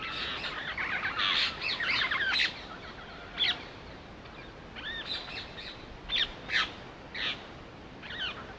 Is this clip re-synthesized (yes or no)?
no